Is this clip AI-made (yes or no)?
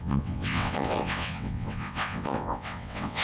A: yes